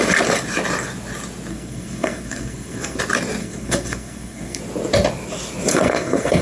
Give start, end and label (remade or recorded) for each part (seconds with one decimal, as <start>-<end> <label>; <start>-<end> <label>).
0.0-1.5 recorded; 1.5-3.0 remade; 3.0-3.4 recorded; 3.4-4.6 remade; 4.6-5.7 recorded; 5.7-6.4 remade